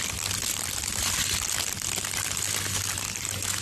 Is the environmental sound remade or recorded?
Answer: recorded